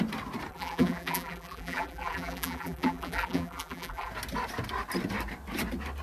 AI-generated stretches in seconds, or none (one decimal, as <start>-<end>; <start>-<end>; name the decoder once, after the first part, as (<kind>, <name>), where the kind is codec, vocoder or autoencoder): 0.5-4.1 (vocoder, BigVGAN v2)